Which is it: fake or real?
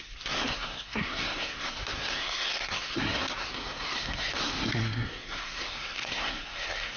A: fake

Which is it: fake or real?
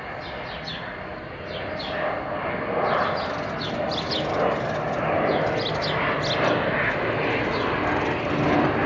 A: real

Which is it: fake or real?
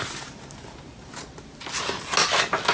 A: real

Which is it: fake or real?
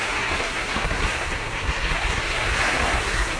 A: fake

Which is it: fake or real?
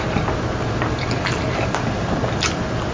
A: real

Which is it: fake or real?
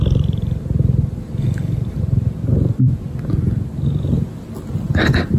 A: real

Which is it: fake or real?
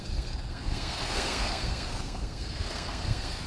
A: fake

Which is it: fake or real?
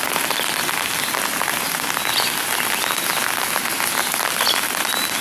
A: real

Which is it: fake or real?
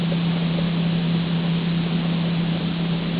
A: fake